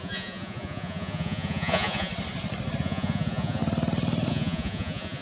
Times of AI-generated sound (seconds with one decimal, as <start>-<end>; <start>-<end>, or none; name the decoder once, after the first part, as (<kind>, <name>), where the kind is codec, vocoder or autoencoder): 0.0-2.1 (vocoder, Vocos); 2.8-3.6; 4.3-5.2